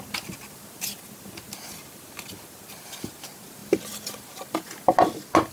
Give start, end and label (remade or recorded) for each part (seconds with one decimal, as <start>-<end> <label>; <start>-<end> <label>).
0.0-5.5 recorded